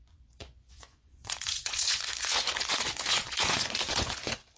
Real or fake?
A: fake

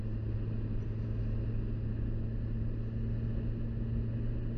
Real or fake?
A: real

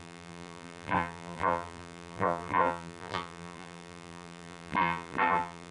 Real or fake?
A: fake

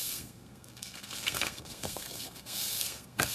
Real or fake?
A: fake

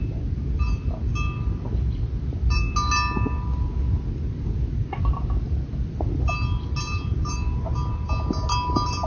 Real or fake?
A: real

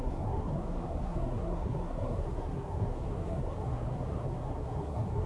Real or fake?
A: fake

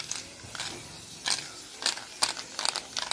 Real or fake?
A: real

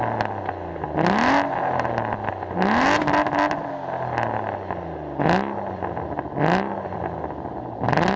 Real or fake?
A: real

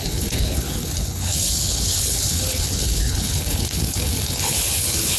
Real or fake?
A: fake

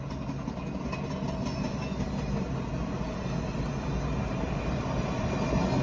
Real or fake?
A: real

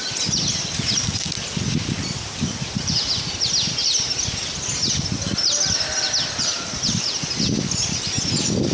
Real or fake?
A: real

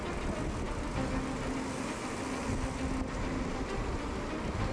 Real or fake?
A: real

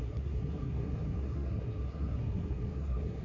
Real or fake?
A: fake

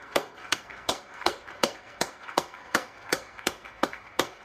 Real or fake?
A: fake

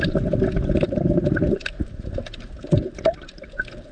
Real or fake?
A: real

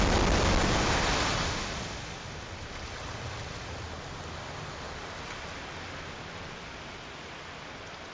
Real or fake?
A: real